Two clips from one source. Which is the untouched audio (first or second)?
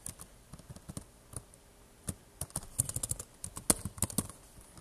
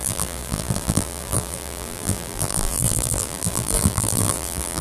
first